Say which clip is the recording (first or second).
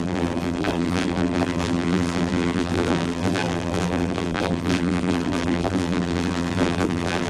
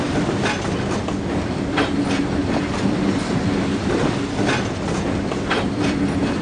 second